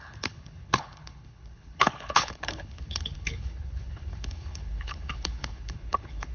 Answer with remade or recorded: remade